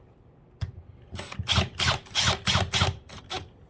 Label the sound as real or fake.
real